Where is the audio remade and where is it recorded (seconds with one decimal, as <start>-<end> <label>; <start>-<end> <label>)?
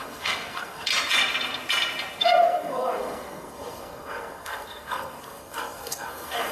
0.0-0.9 remade; 0.9-2.2 recorded; 2.2-6.5 remade